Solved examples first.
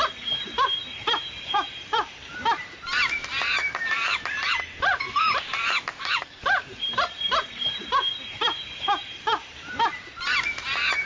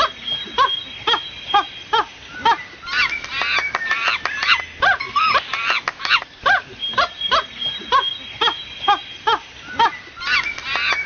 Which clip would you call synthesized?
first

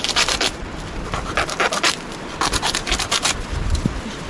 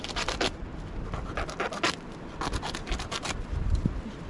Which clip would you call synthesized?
first